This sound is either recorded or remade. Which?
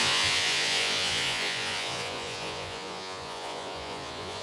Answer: remade